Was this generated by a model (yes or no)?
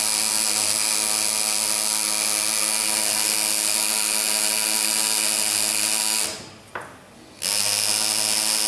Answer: no